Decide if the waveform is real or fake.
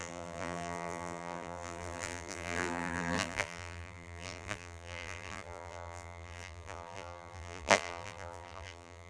fake